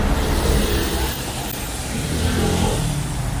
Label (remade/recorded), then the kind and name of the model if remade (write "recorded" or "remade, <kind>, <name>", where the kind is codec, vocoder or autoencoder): recorded